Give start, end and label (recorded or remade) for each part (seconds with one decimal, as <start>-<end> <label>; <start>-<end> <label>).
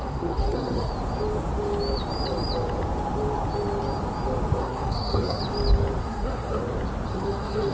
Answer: 0.0-0.9 remade; 0.9-4.6 recorded; 4.6-5.4 remade; 5.4-6.0 recorded; 6.0-6.6 remade; 6.6-7.1 recorded; 7.1-7.7 remade